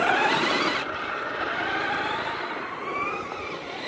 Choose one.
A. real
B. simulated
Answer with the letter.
A